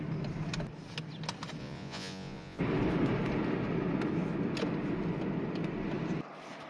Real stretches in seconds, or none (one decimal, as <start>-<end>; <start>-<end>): 0.0-1.6; 2.6-6.7